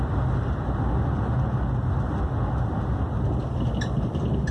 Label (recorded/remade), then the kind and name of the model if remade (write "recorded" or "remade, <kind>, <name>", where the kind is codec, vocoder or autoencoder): recorded